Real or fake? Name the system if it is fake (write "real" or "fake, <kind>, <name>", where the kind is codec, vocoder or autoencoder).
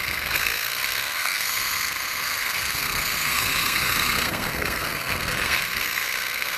fake, codec, SNAC